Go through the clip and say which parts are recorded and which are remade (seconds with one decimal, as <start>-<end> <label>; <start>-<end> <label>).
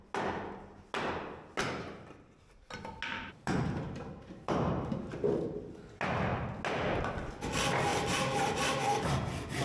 0.0-3.3 recorded; 3.3-5.1 remade; 5.1-9.6 recorded